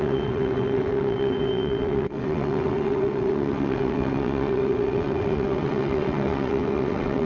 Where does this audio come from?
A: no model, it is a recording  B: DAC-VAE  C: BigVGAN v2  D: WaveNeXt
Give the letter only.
D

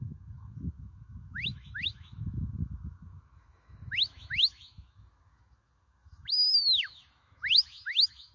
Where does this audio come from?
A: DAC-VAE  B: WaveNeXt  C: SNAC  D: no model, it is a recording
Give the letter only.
A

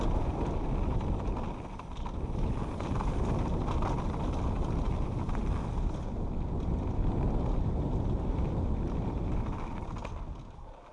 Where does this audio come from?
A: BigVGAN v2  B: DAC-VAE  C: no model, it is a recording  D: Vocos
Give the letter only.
C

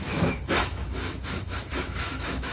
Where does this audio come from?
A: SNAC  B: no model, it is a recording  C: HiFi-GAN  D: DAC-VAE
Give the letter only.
D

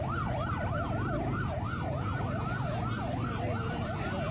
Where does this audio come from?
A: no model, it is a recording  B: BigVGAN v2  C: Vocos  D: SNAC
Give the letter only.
A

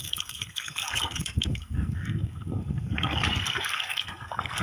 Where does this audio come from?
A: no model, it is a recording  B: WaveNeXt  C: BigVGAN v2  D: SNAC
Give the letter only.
D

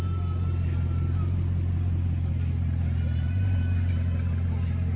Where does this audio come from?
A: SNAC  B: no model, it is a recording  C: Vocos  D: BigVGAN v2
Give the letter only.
B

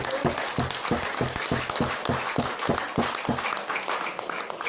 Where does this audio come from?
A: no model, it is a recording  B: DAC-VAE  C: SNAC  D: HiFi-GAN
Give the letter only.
A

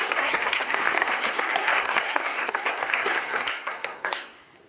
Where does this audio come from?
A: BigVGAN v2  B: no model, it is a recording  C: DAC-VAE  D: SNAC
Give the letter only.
D